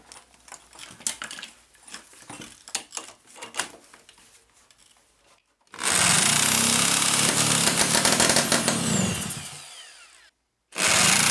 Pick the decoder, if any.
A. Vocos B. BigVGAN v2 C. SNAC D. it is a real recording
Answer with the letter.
D